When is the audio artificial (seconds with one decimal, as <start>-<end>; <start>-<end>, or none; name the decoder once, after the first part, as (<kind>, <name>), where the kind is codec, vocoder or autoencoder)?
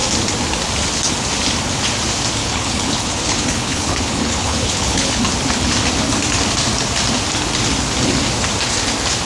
2.4-5.2 (codec, HILCodec)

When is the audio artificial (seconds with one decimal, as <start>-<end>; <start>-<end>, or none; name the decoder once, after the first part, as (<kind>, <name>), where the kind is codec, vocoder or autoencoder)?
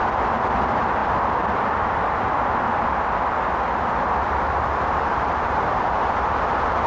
none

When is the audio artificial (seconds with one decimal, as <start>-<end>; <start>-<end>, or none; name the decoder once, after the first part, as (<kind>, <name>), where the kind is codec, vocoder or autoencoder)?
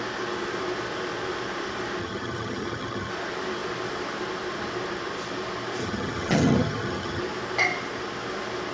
2.0-3.1 (vocoder, HiFi-GAN); 5.8-7.2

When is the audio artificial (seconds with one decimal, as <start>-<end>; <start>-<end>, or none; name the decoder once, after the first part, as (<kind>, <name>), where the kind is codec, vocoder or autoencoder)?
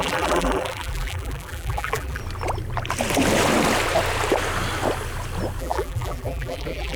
0.0-2.2 (vocoder, BigVGAN v2); 5.6-7.0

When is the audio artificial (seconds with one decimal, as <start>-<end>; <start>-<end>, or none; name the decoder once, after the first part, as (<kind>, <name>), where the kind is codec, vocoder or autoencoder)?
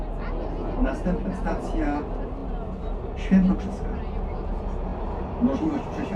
none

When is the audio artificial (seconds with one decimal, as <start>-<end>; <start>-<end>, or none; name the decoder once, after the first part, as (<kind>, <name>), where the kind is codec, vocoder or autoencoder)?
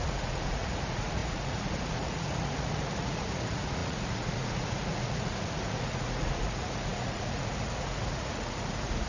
0.0-9.1 (vocoder, Vocos)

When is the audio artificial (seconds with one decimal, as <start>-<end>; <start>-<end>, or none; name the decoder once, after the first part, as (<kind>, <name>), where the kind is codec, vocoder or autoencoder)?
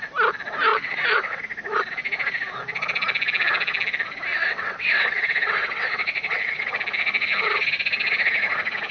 0.7-1.4 (vocoder, WaveNeXt); 4.3-6.8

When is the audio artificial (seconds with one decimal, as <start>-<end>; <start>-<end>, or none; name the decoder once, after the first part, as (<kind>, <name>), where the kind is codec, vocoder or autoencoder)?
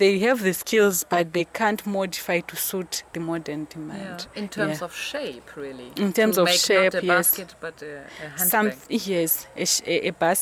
0.6-1.4 (codec, SNAC)